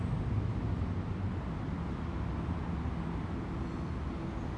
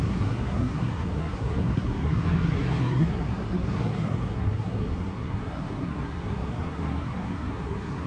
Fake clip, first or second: second